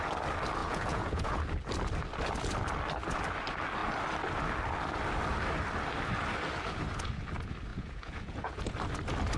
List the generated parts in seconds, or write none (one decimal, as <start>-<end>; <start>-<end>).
0.6-1.4; 7.7-8.7